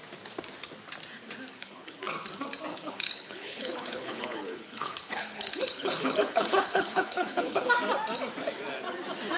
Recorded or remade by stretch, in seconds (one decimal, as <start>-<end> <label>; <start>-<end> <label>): 0.0-1.5 recorded; 1.5-2.0 remade; 2.0-2.7 recorded; 2.7-7.7 remade; 7.7-9.4 recorded